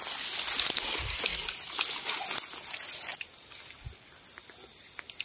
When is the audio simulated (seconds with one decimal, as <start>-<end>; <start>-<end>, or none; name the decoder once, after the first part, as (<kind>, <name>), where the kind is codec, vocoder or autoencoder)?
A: none